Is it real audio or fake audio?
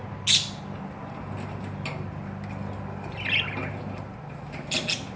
real